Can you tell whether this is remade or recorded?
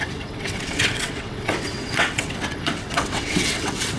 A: remade